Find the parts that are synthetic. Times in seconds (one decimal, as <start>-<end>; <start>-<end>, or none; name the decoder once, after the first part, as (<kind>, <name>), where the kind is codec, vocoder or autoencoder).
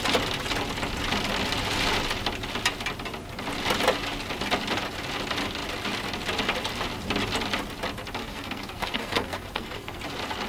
8.2-10.0 (codec, SNAC)